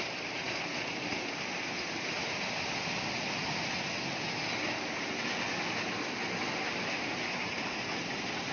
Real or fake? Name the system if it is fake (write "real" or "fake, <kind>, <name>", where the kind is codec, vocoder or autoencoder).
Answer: real